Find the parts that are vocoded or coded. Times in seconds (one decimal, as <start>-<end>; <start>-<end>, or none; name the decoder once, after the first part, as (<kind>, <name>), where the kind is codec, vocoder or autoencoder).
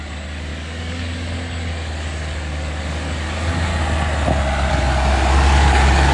0.0-3.7 (codec, DAC); 4.7-6.1